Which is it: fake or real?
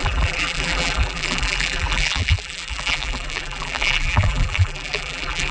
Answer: fake